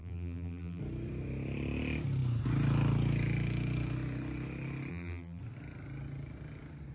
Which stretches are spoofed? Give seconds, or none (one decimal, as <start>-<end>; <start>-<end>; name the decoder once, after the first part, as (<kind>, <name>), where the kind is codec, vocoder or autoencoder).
0.0-0.8 (vocoder, BigVGAN v2); 4.9-5.4